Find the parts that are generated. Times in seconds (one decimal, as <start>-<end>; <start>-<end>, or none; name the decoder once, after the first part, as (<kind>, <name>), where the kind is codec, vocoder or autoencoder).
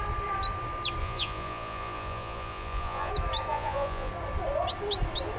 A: 1.0-3.1 (vocoder, Vocos); 3.5-4.1